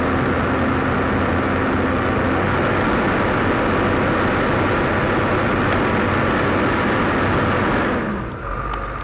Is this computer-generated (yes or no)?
no